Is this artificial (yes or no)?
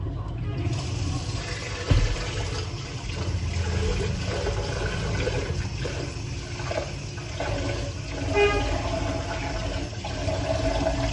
no